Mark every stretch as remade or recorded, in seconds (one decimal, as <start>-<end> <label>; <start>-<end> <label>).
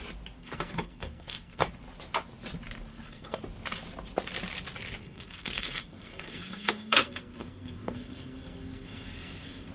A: 0.0-0.4 recorded; 0.4-1.7 remade; 1.7-2.9 recorded; 2.9-3.4 remade; 3.4-5.0 recorded; 5.0-9.7 remade